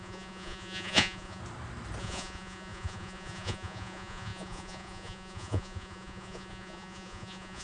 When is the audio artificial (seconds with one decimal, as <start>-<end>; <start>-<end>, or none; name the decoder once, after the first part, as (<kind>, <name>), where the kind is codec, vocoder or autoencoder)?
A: 0.0-1.4 (vocoder, Vocos); 2.0-7.6